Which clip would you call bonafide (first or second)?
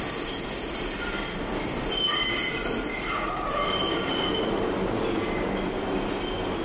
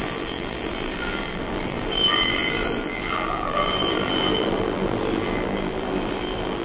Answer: first